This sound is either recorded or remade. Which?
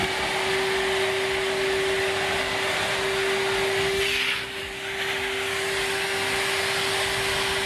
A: recorded